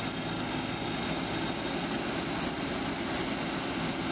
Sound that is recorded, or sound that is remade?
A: recorded